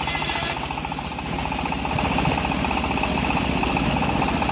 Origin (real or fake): real